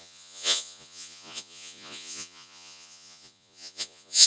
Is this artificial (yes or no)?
yes